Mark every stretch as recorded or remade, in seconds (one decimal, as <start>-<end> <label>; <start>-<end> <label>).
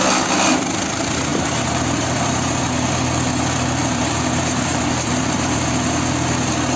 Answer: 0.0-1.3 recorded; 1.3-2.6 remade; 2.6-3.8 recorded; 3.8-5.7 remade; 5.7-6.8 recorded